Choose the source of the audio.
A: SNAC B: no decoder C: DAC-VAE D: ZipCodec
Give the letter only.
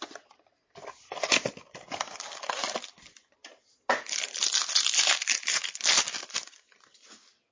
B